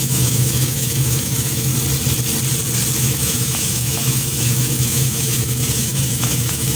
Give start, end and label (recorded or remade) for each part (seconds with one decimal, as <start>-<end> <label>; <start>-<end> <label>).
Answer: 0.0-1.7 remade; 1.7-3.0 recorded; 3.0-6.8 remade

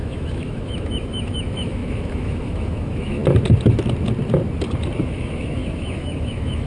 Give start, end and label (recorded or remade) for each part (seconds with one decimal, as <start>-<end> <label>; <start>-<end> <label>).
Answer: 0.0-3.2 remade; 3.2-5.0 recorded; 5.0-6.7 remade

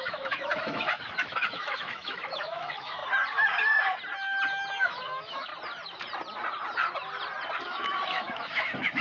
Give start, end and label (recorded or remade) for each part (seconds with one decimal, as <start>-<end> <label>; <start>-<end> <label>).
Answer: 0.0-3.0 remade; 3.0-4.7 recorded; 4.7-5.5 remade; 5.5-7.6 recorded; 7.6-9.0 remade

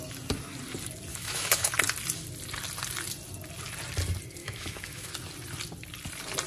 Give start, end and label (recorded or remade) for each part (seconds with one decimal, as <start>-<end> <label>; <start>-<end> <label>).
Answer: 0.0-1.1 recorded; 1.1-1.7 remade; 1.7-4.4 recorded; 4.4-5.1 remade; 5.1-6.5 recorded

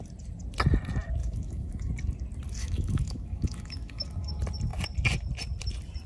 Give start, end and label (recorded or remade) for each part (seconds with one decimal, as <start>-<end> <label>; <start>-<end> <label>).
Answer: 0.0-1.2 recorded; 1.2-1.9 remade; 1.9-2.6 recorded; 2.6-4.3 remade; 4.3-6.1 recorded

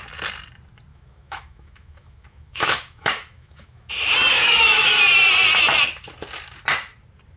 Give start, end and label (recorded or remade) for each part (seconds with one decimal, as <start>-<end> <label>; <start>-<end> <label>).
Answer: 0.0-0.9 recorded; 0.9-3.9 remade; 3.9-4.3 recorded; 4.3-5.0 remade; 5.0-7.4 recorded

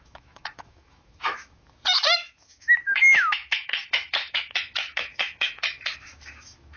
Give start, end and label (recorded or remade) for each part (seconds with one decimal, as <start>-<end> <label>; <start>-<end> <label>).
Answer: 0.0-6.8 remade